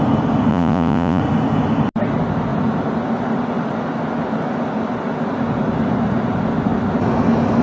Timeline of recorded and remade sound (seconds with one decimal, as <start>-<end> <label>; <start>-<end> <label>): 0.0-0.5 recorded; 0.5-1.2 remade; 1.2-7.6 recorded